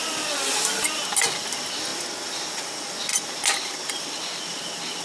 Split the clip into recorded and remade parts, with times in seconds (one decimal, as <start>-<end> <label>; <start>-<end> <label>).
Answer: 0.0-5.0 recorded